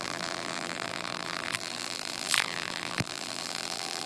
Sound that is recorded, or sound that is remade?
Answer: remade